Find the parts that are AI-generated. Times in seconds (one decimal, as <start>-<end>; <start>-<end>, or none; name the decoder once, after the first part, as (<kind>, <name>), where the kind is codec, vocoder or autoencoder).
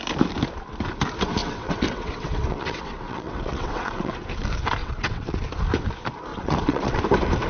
1.4-4.3 (vocoder, WaveNeXt); 4.8-5.4; 6.3-7.0